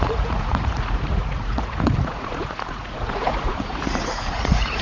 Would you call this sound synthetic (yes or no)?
yes